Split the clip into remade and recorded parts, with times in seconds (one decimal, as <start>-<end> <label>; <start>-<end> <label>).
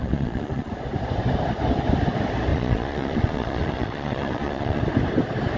0.0-0.7 remade; 0.7-2.5 recorded; 2.5-4.8 remade; 4.8-5.6 recorded